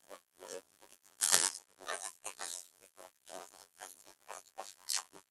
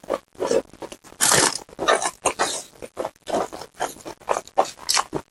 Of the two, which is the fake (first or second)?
first